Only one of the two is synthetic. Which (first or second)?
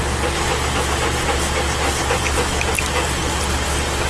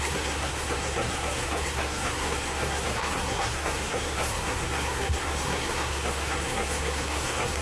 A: second